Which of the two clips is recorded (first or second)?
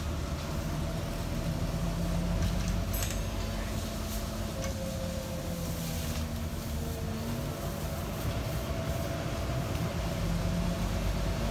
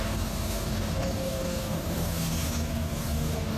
first